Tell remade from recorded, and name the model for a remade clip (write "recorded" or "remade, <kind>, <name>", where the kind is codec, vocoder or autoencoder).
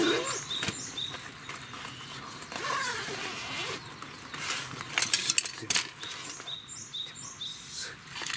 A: recorded